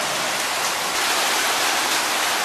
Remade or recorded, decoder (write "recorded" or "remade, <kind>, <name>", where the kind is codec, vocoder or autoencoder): recorded